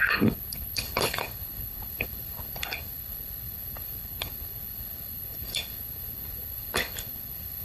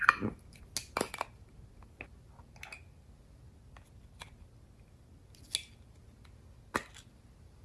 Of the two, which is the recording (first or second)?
second